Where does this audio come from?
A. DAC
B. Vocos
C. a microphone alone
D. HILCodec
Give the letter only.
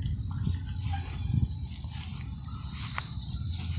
C